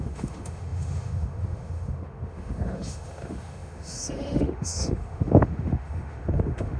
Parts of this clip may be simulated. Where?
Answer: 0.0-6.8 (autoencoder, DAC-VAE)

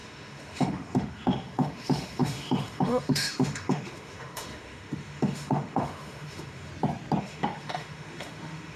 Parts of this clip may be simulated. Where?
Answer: 0.0-6.7 (autoencoder, DAC-VAE); 7.2-8.8

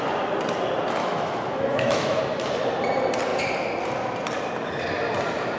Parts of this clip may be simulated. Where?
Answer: 1.0-2.2 (autoencoder, DAC-VAE)

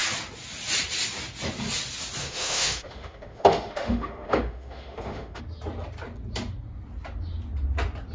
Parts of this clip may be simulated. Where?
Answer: 2.2-5.4 (autoencoder, DAC-VAE)

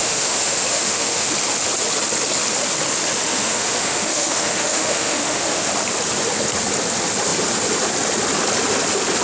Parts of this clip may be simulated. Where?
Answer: 0.0-1.3 (autoencoder, DAC-VAE); 3.3-5.7

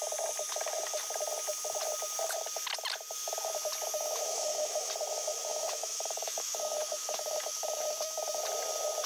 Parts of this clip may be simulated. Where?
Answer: 3.9-4.9 (autoencoder, DAC-VAE); 5.5-8.4